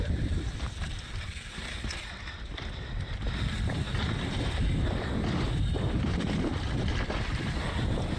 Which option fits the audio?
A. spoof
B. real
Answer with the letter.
A